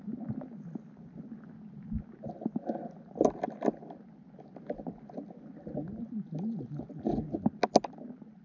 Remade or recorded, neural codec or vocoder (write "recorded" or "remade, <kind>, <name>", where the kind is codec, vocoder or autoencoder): recorded